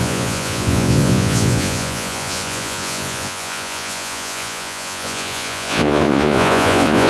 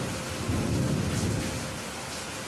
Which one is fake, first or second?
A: first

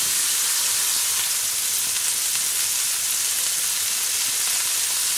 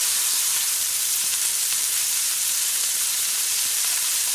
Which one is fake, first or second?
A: second